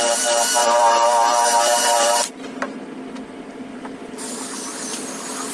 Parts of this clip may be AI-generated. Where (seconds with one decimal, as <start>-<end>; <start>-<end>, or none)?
0.6-2.6